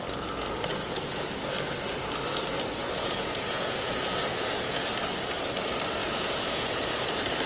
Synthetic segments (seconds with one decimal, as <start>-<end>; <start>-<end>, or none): 0.7-1.3; 2.8-4.8; 6.0-7.1